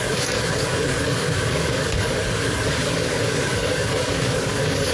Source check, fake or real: fake